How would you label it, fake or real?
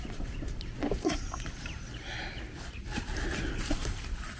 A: real